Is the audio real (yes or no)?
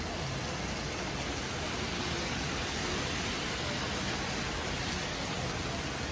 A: yes